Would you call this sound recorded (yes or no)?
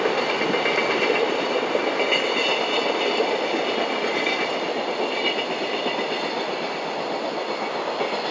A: yes